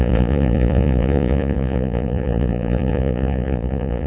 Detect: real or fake fake